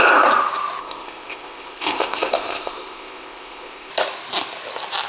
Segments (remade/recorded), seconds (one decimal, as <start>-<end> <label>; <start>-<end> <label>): 0.0-0.8 recorded; 0.8-3.9 remade; 3.9-5.1 recorded